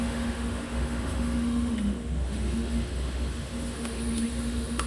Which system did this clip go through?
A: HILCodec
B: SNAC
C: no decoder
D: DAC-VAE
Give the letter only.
D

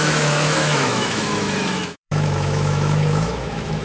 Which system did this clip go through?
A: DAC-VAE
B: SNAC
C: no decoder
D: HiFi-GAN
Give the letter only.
A